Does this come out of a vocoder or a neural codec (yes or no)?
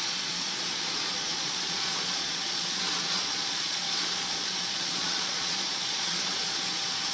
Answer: yes